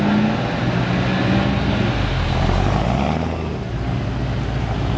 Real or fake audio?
real